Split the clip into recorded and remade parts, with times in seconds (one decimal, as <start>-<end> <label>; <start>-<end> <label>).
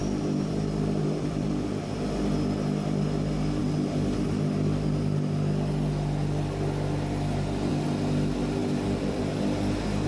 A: 0.0-1.8 remade; 1.8-8.6 recorded; 8.6-9.3 remade; 9.3-10.1 recorded